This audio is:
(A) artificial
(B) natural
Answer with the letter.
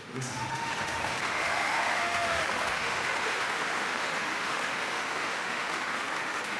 A